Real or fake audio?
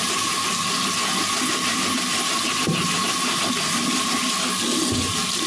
real